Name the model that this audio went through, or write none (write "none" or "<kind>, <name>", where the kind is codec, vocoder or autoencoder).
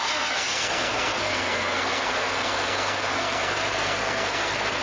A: codec, SNAC